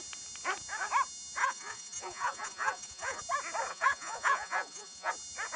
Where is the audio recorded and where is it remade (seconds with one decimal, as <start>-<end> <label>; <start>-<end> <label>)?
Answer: 0.0-1.4 recorded; 1.4-3.2 remade; 3.2-3.7 recorded; 3.7-5.1 remade; 5.1-5.6 recorded